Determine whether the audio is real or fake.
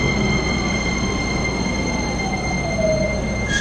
real